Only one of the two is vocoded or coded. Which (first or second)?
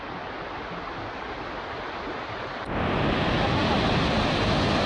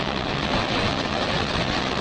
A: second